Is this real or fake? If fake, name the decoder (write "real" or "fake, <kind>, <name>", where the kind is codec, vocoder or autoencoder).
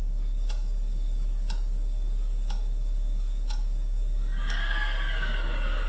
fake, codec, DAC